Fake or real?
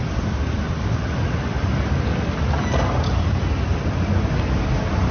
real